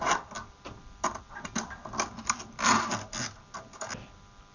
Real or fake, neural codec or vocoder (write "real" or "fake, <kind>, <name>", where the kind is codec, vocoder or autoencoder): real